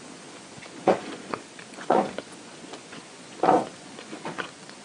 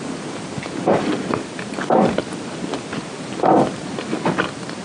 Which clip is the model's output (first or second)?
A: first